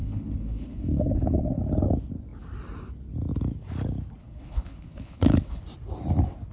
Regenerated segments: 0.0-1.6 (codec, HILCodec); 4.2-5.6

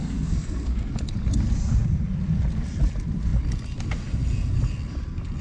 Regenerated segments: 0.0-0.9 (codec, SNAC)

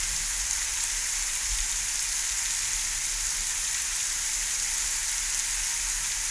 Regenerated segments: 3.0-4.2 (vocoder, BigVGAN v2)

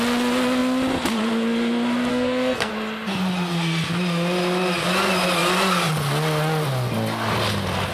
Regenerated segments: 2.1-2.7 (codec, SNAC)

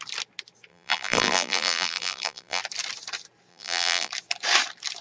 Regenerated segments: 0.7-2.6 (vocoder, BigVGAN v2); 3.5-4.1

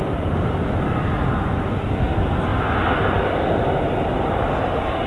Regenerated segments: none

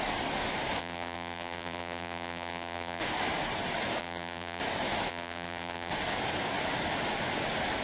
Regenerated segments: 0.8-3.0 (vocoder, BigVGAN v2); 4.0-4.6; 5.1-5.9

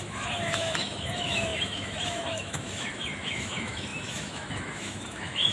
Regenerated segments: 0.0-5.5 (autoencoder, DAC-VAE)